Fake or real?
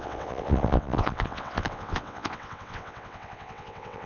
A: fake